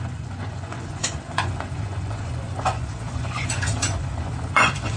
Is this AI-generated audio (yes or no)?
yes